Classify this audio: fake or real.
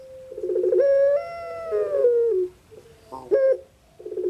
real